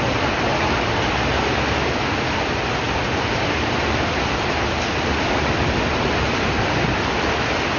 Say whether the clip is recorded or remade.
recorded